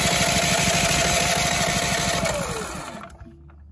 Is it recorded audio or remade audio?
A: recorded